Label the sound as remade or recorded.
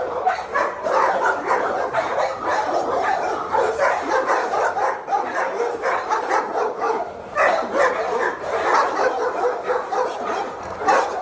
remade